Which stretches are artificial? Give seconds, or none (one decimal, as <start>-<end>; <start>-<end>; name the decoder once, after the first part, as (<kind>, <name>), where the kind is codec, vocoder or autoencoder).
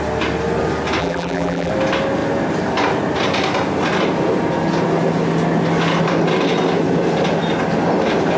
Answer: 1.0-1.7 (vocoder, BigVGAN v2)